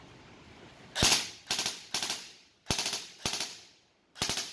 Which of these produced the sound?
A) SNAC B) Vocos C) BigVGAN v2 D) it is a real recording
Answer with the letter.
D